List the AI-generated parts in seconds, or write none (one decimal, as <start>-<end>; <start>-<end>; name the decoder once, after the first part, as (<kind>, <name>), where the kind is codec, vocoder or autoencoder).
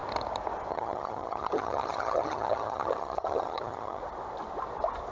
0.7-4.0 (vocoder, HiFi-GAN)